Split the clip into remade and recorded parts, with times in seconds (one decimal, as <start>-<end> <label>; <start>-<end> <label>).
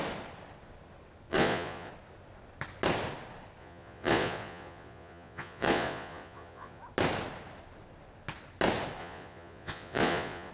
0.0-1.3 recorded; 1.3-1.9 remade; 1.9-3.6 recorded; 3.6-6.8 remade; 6.8-9.0 recorded; 9.0-10.5 remade